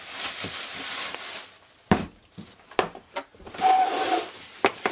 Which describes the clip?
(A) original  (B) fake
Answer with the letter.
B